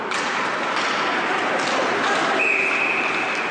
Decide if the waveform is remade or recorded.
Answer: recorded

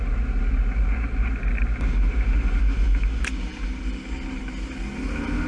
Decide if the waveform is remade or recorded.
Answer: recorded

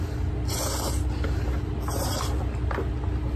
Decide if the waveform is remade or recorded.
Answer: recorded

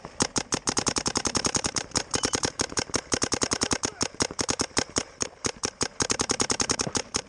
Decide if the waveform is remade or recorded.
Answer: remade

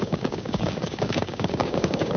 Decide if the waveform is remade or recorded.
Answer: remade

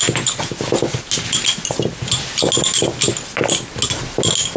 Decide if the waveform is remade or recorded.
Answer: recorded